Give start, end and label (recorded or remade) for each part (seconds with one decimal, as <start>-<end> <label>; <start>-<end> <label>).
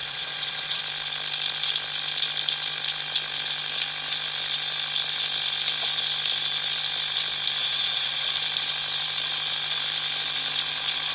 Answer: 0.0-0.8 remade; 0.8-7.6 recorded; 7.6-8.3 remade; 8.3-11.1 recorded